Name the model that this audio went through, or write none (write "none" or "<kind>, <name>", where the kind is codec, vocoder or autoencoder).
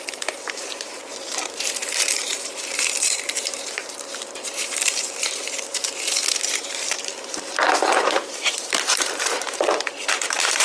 vocoder, BigVGAN v2